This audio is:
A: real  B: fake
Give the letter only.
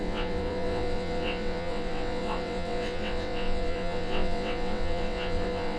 B